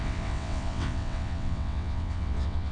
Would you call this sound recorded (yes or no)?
no